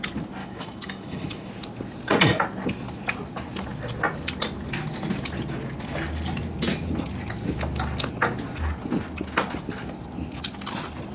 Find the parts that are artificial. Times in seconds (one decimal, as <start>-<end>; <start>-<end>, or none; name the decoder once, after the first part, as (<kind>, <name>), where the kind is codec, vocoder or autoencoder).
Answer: 0.4-1.5 (autoencoder, DAC-VAE)